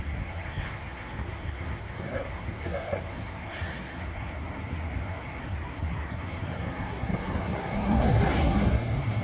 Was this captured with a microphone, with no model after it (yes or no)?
no